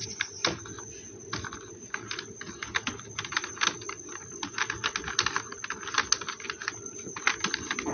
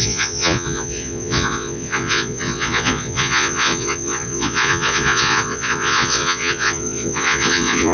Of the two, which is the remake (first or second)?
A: second